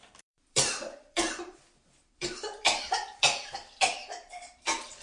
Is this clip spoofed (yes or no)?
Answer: yes